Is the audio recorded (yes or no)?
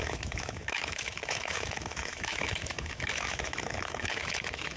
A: no